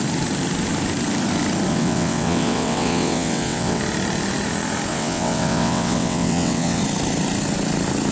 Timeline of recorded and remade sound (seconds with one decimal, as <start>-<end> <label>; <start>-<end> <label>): 0.0-1.7 recorded; 1.7-3.8 remade; 3.8-4.9 recorded; 4.9-6.8 remade; 6.8-8.1 recorded